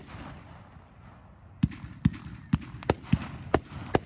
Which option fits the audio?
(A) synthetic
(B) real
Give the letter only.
B